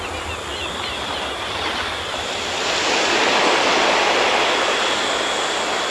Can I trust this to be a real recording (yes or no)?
yes